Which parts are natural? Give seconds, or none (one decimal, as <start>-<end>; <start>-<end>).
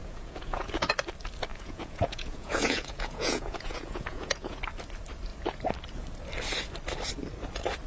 0.8-1.5; 4.6-7.9